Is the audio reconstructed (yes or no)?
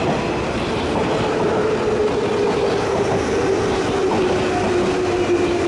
no